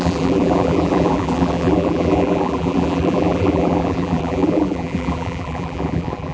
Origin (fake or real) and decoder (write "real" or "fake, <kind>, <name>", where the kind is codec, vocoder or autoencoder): fake, vocoder, BigVGAN v2